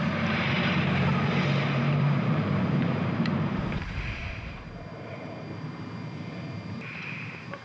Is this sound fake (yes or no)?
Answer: yes